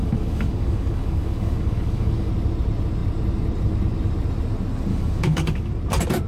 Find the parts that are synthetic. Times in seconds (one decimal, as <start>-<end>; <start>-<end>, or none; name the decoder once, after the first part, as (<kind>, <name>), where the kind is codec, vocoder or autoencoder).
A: 0.0-2.3 (codec, DAC); 4.9-5.7